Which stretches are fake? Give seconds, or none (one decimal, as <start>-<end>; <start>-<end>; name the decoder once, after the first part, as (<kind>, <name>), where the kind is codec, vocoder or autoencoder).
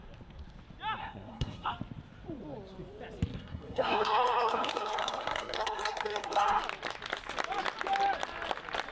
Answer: 1.0-1.7 (codec, SNAC); 3.3-6.6